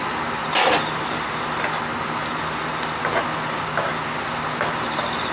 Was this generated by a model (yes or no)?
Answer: no